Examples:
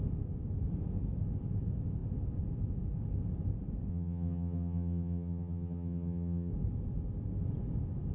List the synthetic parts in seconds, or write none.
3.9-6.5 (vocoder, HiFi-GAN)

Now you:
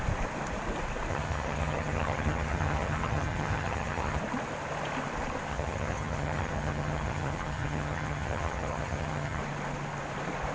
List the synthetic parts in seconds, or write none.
1.1-4.2 (vocoder, HiFi-GAN); 5.5-9.4

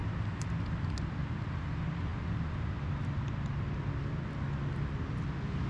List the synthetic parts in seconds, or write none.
none

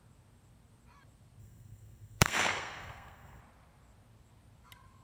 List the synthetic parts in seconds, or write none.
1.4-3.4 (codec, SNAC)

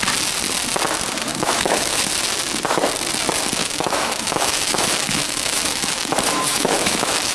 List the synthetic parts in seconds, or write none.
1.3-2.0 (autoencoder, DAC-VAE); 3.6-6.0; 6.5-7.3

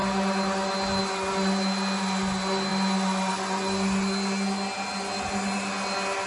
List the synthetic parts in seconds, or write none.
none

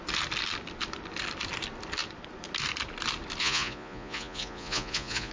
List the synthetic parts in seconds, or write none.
3.4-5.3 (vocoder, Vocos)